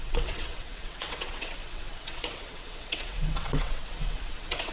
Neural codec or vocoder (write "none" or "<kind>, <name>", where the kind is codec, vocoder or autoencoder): vocoder, WaveNeXt